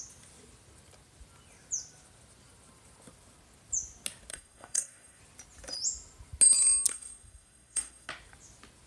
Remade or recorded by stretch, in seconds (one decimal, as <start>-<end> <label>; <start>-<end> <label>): 0.0-4.3 recorded; 4.3-5.2 remade; 5.2-6.9 recorded; 6.9-8.1 remade; 8.1-8.9 recorded